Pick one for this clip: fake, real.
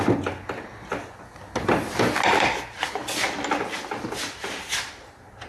real